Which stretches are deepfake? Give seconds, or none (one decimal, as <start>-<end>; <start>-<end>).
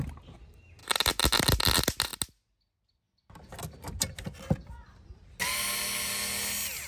none